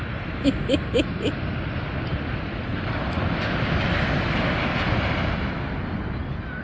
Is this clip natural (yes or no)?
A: yes